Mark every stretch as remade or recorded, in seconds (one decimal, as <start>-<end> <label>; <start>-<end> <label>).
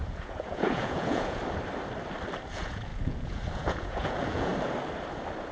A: 0.0-1.4 remade; 1.4-2.5 recorded; 2.5-4.5 remade; 4.5-5.5 recorded